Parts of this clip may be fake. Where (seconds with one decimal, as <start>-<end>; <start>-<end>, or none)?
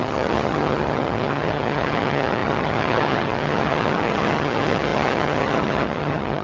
0.0-6.4